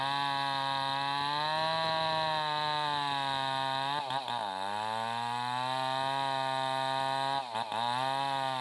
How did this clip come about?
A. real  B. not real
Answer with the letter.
A